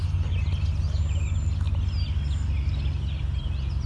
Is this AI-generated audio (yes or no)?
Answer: no